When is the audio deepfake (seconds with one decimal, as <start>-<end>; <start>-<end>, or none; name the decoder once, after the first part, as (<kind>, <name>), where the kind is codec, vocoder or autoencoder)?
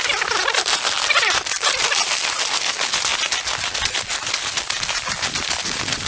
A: 0.0-6.1 (vocoder, BigVGAN v2)